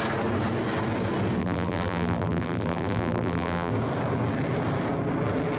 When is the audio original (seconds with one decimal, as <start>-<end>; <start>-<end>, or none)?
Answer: 0.0-1.4; 3.7-5.6